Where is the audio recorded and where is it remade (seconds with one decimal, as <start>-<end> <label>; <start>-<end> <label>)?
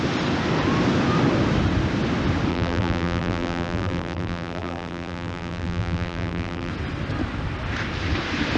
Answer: 0.0-2.5 recorded; 2.5-6.7 remade; 6.7-8.6 recorded